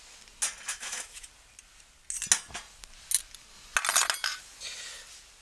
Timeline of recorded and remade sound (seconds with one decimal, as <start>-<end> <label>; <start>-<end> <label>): 0.0-0.7 recorded; 0.7-1.3 remade; 1.3-5.4 recorded